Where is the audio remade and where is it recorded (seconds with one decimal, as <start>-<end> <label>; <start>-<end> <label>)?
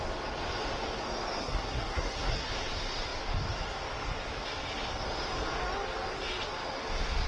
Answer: 0.0-1.4 recorded; 1.4-2.5 remade; 2.5-7.3 recorded